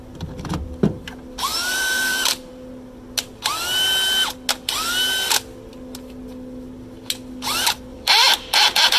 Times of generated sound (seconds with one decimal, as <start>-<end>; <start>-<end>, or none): 1.5-2.5; 7.9-9.0

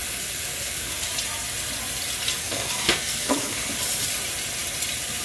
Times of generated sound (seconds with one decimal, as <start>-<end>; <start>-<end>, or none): 0.0-1.1; 2.4-3.7

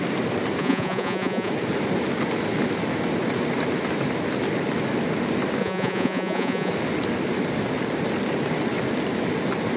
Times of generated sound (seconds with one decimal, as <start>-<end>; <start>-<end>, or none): 0.6-1.5; 5.6-6.7

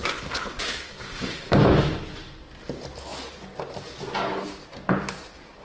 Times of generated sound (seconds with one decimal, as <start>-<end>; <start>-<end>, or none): 0.0-1.6

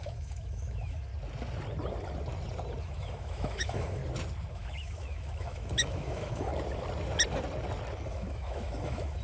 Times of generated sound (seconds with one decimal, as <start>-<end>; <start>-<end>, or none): 0.0-1.1; 2.8-4.0; 4.5-6.5; 8.1-9.2

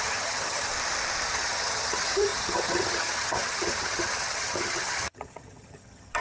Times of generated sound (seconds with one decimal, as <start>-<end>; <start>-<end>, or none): 0.0-0.7; 1.3-6.2